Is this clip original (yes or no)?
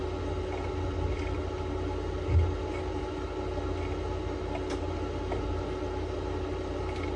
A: yes